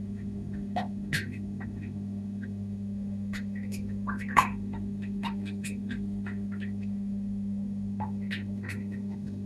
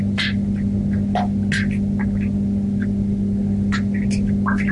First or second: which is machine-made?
first